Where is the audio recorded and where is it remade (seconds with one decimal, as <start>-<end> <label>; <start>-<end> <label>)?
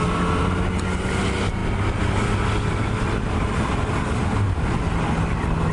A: 0.0-5.7 recorded